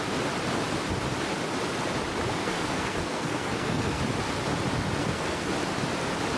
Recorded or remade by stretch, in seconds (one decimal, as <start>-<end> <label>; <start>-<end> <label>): 0.0-2.4 recorded; 2.4-4.0 remade; 4.0-5.0 recorded; 5.0-5.5 remade; 5.5-6.4 recorded